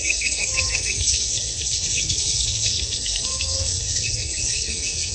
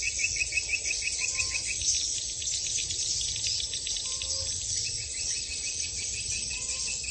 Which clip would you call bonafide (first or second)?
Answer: second